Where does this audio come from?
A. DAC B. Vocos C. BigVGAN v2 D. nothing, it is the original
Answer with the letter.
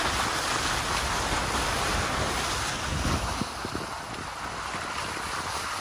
D